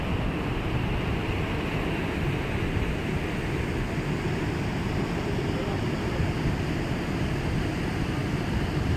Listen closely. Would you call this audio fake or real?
real